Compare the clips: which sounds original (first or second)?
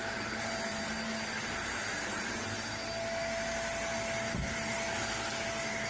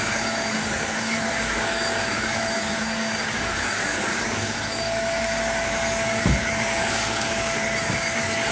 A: first